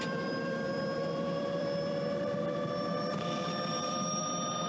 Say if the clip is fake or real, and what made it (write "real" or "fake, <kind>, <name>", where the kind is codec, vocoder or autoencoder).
fake, vocoder, BigVGAN v2